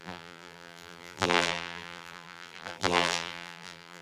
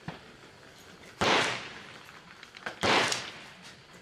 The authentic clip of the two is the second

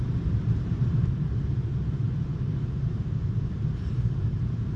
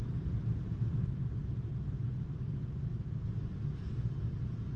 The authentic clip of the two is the second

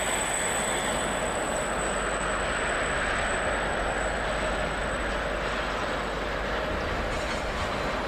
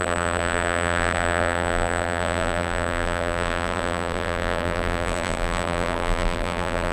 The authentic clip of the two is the first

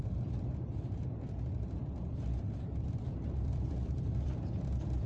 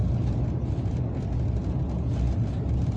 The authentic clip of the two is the second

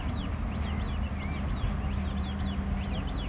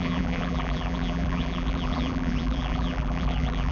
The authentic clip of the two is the first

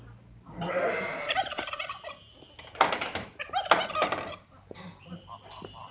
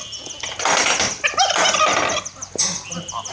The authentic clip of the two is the second